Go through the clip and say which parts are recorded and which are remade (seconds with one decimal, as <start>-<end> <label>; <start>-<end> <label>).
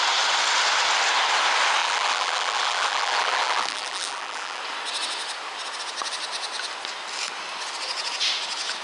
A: 0.0-1.8 recorded; 1.8-4.6 remade; 4.6-8.8 recorded